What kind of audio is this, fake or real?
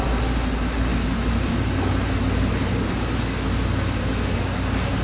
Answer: real